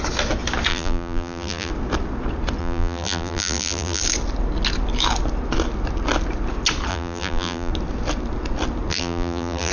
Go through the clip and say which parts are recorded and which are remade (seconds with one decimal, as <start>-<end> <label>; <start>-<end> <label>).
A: 0.0-0.7 recorded; 0.7-1.7 remade; 1.7-2.6 recorded; 2.6-4.0 remade; 4.0-6.9 recorded; 6.9-7.7 remade; 7.7-8.9 recorded; 8.9-9.7 remade